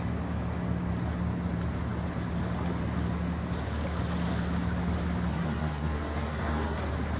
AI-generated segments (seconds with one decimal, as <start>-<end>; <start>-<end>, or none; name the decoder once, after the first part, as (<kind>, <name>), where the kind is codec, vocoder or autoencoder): 5.3-6.8 (codec, SNAC)